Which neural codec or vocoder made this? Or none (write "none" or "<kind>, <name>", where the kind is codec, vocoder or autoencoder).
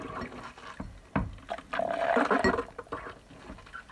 none